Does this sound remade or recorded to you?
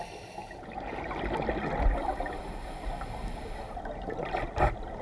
recorded